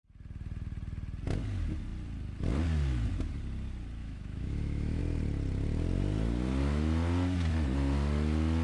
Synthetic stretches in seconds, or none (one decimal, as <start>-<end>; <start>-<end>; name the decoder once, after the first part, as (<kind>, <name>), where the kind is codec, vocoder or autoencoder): 4.0-5.0 (autoencoder, DAC-VAE)